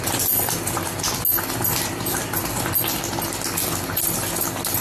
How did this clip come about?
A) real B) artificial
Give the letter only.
A